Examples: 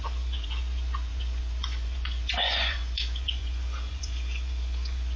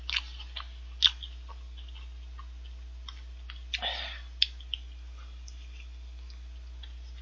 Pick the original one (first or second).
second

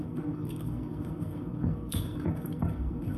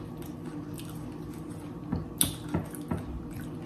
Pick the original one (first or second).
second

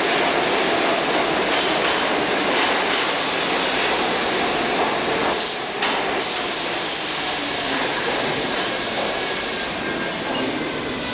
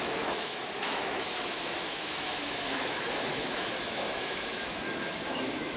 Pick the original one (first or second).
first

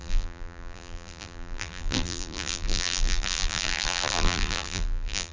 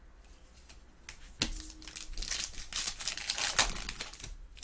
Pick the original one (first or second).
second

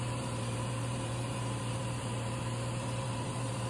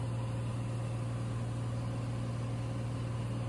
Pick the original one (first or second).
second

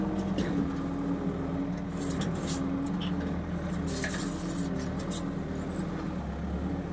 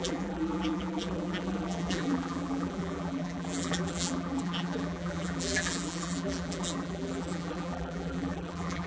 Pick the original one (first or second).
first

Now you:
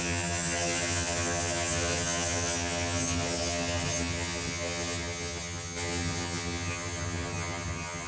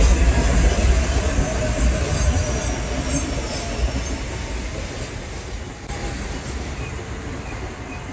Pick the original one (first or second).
second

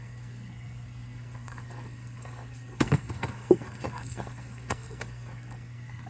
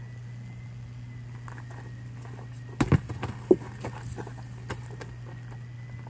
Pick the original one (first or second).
second